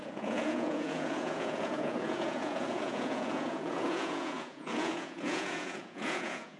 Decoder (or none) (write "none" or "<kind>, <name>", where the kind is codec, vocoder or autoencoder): vocoder, Vocos